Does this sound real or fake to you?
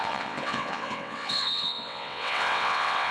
fake